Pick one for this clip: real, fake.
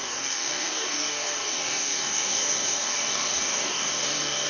fake